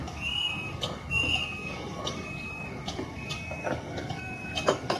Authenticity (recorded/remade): remade